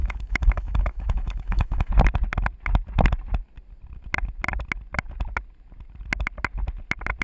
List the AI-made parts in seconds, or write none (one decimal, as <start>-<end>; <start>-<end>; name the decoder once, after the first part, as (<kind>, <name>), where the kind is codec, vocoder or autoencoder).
0.0-1.9 (autoencoder, DAC-VAE)